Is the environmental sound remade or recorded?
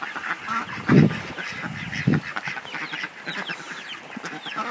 recorded